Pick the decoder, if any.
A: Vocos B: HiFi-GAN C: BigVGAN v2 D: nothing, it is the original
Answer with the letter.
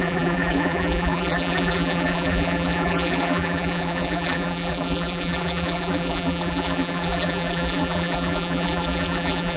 C